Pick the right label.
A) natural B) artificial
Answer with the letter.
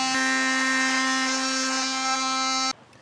A